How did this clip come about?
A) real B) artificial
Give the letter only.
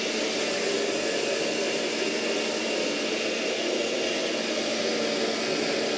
A